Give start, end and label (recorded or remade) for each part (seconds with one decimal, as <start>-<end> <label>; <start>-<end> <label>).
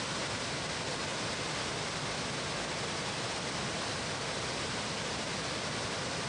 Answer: 0.0-6.3 recorded